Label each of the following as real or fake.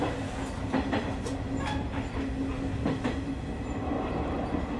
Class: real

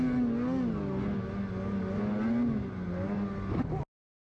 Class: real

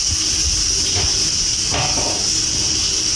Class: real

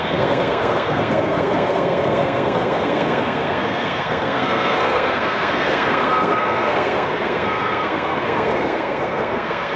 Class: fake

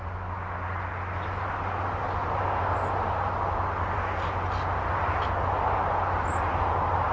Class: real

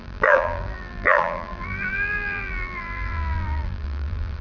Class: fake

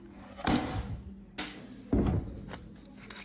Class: real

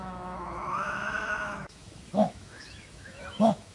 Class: fake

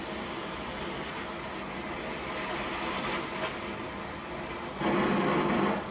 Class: real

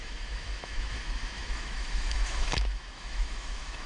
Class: fake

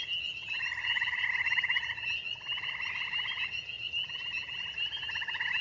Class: real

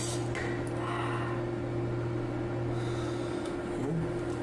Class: real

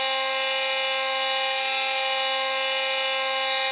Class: real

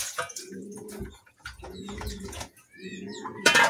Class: fake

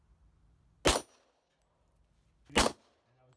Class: real